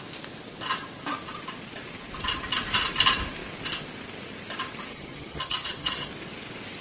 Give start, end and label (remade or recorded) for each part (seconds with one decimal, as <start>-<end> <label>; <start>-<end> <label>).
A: 0.0-4.9 recorded; 4.9-6.1 remade; 6.1-6.8 recorded

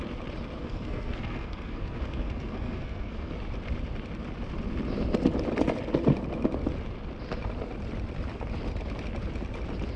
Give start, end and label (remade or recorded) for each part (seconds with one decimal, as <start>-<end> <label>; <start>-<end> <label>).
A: 0.0-0.6 recorded; 0.6-3.3 remade; 3.3-10.0 recorded

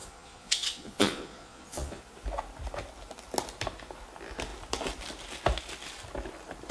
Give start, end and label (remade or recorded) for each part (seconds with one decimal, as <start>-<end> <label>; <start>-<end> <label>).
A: 0.0-2.0 remade; 2.0-6.7 recorded

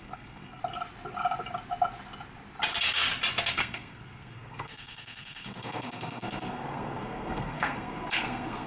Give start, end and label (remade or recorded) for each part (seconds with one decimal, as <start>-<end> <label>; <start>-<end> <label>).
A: 0.0-0.6 remade; 0.6-3.5 recorded; 3.5-8.7 remade